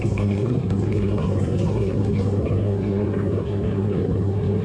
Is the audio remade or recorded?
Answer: remade